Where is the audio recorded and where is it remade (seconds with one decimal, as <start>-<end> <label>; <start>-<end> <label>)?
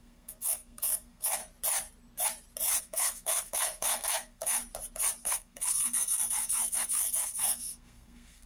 0.0-1.4 remade; 1.4-2.8 recorded; 2.8-4.6 remade; 4.6-5.2 recorded; 5.2-8.5 remade